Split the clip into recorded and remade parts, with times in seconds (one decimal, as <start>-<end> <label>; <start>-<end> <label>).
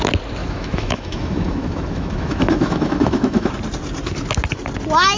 0.0-0.4 recorded; 0.4-3.5 remade; 3.5-5.2 recorded